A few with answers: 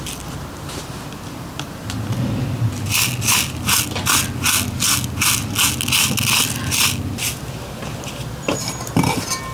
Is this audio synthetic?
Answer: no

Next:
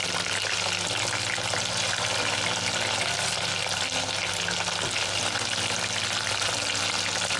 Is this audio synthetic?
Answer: no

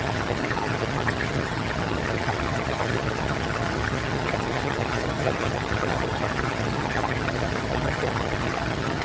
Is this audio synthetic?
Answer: yes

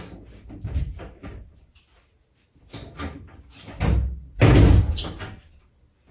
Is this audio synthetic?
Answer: no